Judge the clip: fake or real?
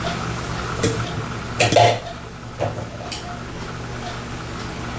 real